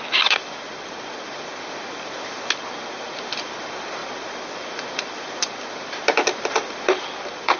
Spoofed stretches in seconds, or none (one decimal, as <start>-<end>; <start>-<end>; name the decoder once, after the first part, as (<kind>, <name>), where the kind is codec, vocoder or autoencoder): none